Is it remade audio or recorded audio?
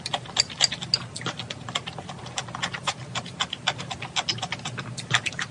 recorded